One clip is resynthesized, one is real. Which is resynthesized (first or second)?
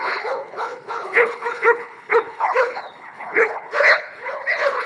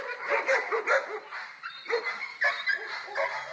first